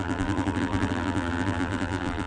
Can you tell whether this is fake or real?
fake